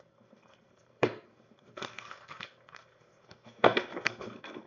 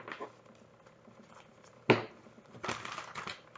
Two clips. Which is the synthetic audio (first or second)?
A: first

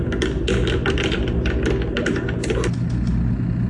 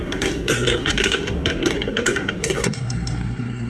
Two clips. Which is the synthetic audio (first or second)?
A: second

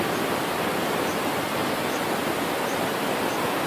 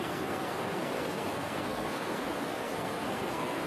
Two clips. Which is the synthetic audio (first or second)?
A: second